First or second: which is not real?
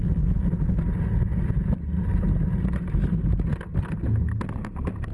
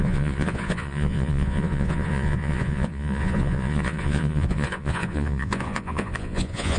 second